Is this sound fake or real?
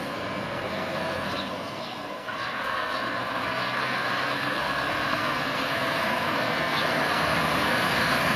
fake